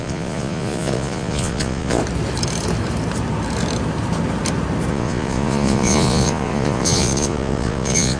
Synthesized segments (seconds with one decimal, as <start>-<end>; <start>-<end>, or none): 0.0-2.0; 4.9-8.2

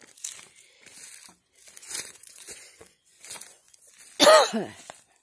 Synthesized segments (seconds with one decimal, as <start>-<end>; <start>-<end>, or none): 1.8-3.9

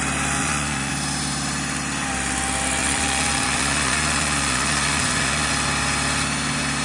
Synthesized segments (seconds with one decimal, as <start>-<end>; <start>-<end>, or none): 0.4-0.9; 2.8-5.5

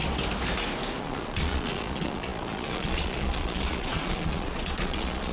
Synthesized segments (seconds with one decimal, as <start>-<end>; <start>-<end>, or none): 1.0-5.3

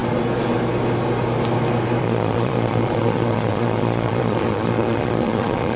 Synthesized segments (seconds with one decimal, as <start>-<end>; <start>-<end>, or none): 2.0-5.8

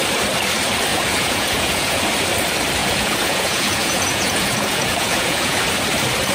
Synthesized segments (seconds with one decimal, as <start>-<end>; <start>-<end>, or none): 0.9-2.0; 2.8-5.6

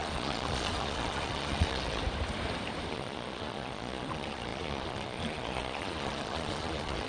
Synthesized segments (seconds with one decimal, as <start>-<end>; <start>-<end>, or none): 0.0-2.0; 2.9-7.1